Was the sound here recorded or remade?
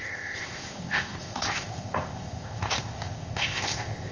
remade